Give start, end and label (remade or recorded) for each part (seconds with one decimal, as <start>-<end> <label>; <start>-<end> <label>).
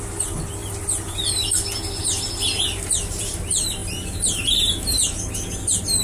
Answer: 0.0-2.0 recorded; 2.0-3.3 remade; 3.3-3.8 recorded; 3.8-5.3 remade; 5.3-6.0 recorded